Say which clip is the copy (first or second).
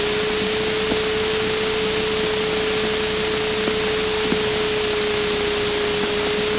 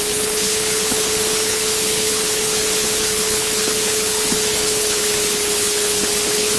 second